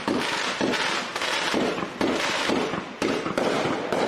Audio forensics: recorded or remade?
remade